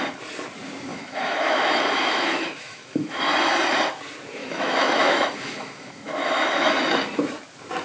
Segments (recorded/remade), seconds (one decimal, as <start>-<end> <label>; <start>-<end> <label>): 0.0-0.9 recorded; 0.9-3.2 remade; 3.2-4.4 recorded; 4.4-6.7 remade; 6.7-7.8 recorded